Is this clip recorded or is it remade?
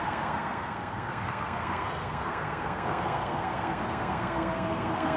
remade